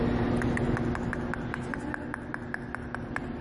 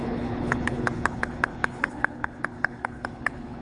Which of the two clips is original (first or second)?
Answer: first